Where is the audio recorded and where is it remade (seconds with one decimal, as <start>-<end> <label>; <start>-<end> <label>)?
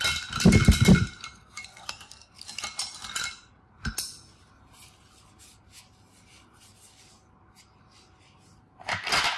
0.0-1.7 recorded; 1.7-2.3 remade; 2.3-9.4 recorded